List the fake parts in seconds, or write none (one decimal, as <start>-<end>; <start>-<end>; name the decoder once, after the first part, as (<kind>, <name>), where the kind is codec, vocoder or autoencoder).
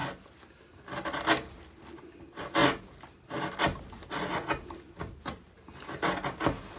none